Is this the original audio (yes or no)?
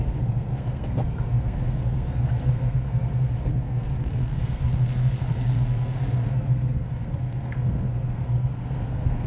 no